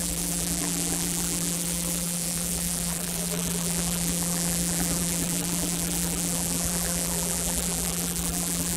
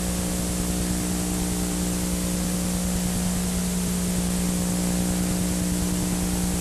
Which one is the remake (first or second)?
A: first